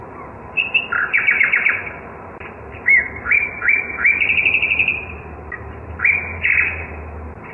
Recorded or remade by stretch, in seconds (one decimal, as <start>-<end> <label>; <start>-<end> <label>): 0.0-1.4 remade; 1.4-3.0 recorded; 3.0-3.5 remade; 3.5-4.9 recorded; 4.9-6.0 remade; 6.0-7.5 recorded